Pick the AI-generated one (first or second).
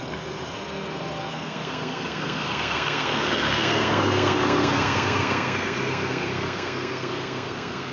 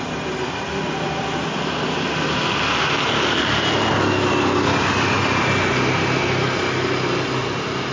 first